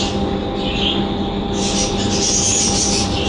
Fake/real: real